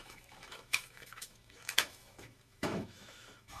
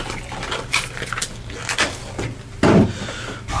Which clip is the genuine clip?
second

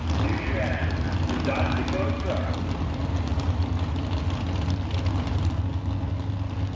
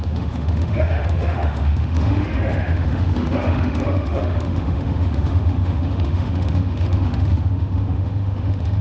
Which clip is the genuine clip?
first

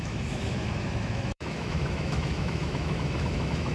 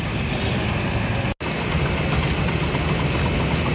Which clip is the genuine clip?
second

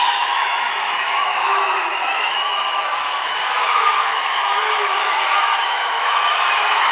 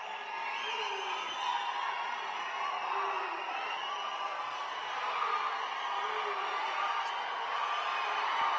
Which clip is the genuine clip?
second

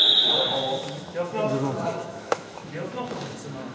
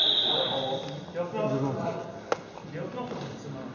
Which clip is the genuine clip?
second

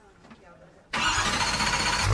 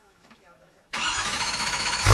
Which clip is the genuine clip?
first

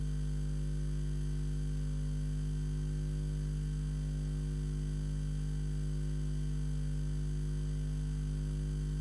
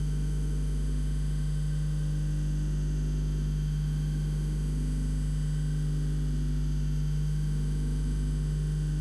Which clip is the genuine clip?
first